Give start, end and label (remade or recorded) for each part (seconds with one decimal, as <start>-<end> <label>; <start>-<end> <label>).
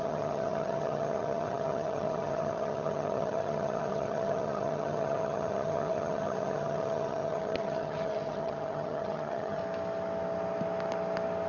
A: 0.0-9.6 remade; 9.6-11.5 recorded